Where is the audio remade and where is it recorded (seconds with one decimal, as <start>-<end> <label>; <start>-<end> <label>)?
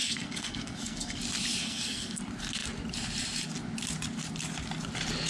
0.0-1.2 remade; 1.2-1.6 recorded; 1.6-2.2 remade; 2.2-5.3 recorded